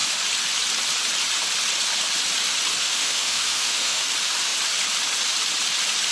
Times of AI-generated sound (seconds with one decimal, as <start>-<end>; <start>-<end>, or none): 2.8-4.0